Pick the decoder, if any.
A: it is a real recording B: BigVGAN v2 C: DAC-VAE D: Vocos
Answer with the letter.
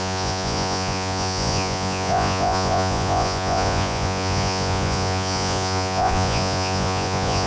D